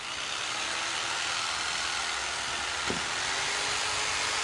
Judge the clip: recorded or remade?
recorded